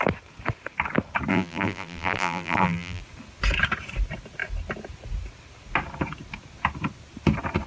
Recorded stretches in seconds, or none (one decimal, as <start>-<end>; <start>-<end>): 0.0-1.3; 3.0-7.7